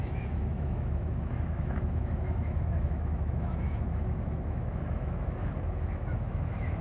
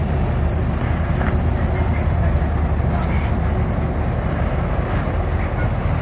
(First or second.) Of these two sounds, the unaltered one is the second